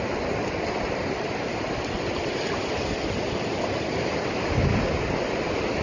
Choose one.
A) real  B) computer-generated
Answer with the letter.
A